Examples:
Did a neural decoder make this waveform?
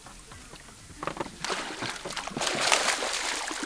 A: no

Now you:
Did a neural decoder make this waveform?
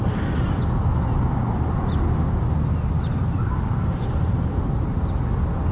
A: no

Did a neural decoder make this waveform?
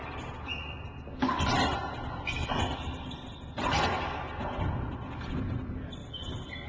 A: no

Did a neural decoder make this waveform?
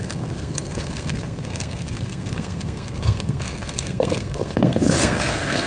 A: yes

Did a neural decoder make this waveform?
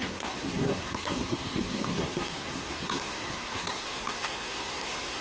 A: yes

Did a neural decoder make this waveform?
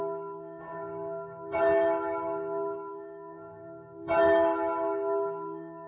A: yes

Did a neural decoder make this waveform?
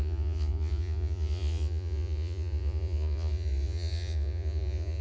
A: yes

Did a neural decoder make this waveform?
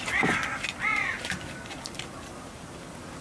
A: no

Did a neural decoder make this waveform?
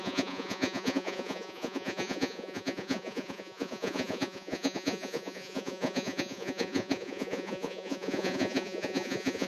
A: yes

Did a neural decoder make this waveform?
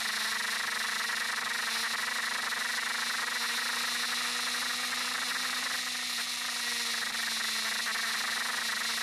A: no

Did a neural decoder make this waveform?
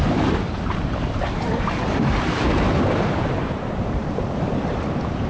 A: yes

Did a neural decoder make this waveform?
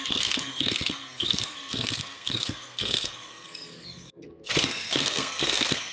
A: yes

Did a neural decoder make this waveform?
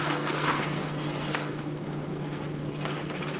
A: yes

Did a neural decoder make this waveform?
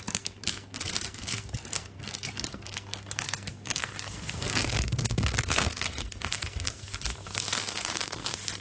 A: yes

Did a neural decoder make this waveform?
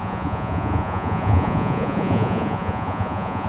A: yes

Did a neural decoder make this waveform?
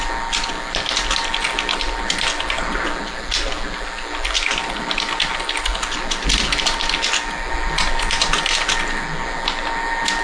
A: no